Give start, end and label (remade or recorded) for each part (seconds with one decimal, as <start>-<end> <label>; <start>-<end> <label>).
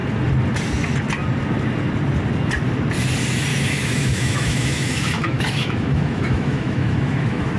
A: 0.0-3.5 recorded; 3.5-7.6 remade